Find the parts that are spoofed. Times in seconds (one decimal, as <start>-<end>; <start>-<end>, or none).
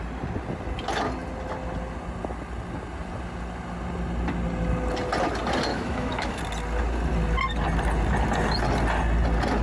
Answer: 5.7-6.4